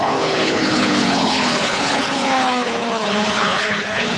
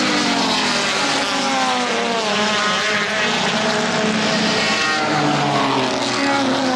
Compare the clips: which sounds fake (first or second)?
first